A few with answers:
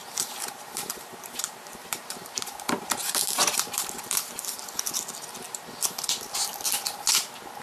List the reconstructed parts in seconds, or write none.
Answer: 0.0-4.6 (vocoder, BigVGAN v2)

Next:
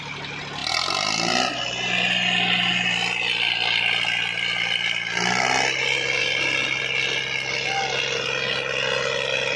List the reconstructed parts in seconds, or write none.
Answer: none

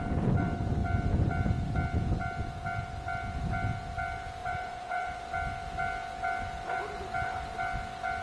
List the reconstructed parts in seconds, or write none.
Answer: 4.4-5.2 (vocoder, Vocos)

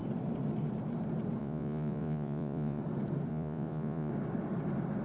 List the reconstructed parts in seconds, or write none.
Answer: 1.4-2.8 (vocoder, Vocos); 3.3-4.1

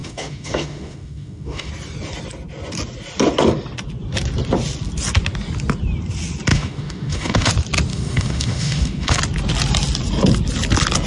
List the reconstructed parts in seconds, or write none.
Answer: 0.0-1.7 (autoencoder, DAC-VAE); 6.5-7.5; 7.9-9.2

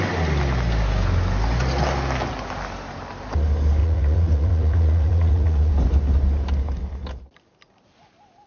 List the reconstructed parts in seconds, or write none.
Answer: 3.8-5.7 (vocoder, Vocos)

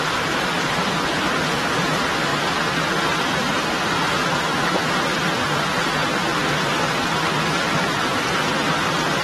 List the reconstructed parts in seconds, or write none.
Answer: none